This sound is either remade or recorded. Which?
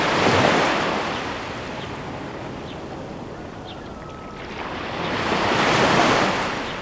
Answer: recorded